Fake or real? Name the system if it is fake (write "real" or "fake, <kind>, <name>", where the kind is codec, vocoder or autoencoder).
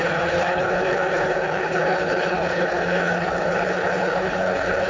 fake, codec, HILCodec